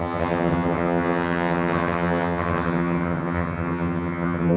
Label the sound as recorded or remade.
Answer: remade